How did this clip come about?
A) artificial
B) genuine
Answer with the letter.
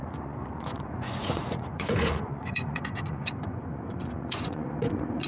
A